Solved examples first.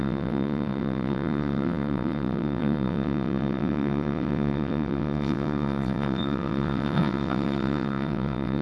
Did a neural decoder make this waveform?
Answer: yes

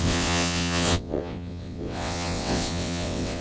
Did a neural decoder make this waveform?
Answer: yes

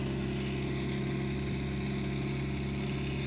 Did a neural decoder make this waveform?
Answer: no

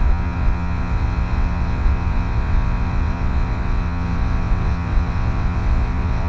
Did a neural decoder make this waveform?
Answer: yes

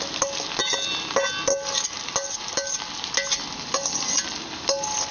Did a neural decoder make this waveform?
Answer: no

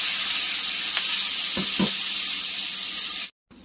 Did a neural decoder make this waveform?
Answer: no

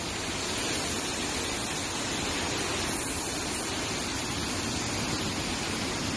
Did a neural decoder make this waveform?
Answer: no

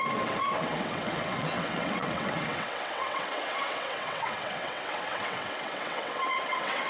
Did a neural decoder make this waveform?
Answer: yes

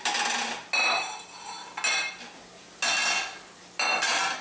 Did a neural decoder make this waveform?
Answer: no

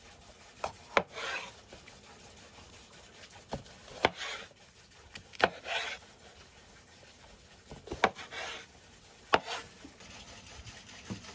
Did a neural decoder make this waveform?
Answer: no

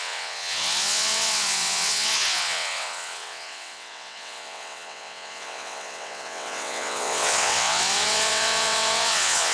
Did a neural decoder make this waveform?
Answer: yes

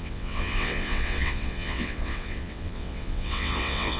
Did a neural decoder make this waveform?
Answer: yes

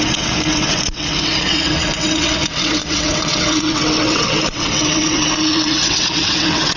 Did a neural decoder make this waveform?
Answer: yes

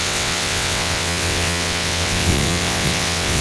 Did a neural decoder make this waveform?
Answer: yes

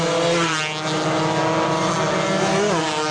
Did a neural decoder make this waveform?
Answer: no